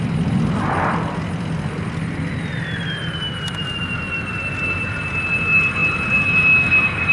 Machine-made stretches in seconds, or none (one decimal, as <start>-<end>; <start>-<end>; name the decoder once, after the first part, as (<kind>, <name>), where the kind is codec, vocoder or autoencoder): none